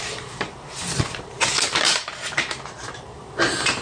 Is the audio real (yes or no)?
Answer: no